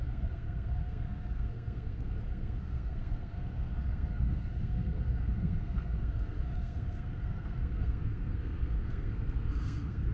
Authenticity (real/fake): fake